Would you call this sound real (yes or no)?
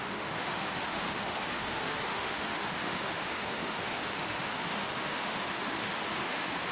no